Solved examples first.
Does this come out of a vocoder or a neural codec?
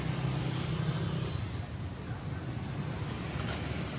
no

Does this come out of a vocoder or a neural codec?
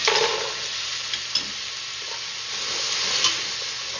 no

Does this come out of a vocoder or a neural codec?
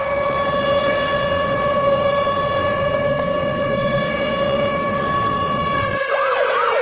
yes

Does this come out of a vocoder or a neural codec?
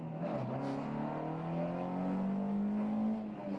no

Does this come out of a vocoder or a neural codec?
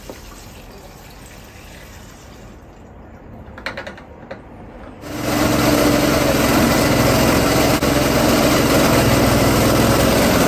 no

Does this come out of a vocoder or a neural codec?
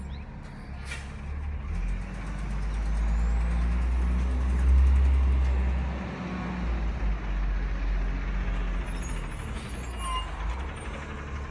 no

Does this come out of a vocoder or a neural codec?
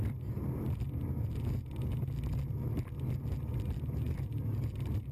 no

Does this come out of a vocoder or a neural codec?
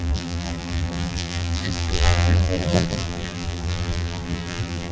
yes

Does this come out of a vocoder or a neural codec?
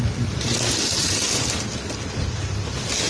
no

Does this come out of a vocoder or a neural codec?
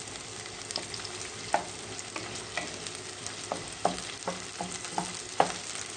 no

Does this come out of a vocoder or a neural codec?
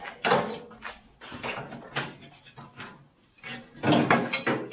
no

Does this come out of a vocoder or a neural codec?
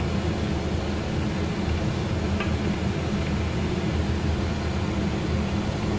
no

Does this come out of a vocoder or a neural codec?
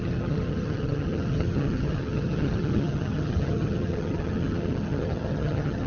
yes